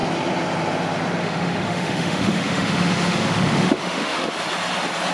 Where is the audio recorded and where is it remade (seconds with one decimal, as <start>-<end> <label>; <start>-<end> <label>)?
0.0-1.2 recorded; 1.2-4.3 remade; 4.3-5.1 recorded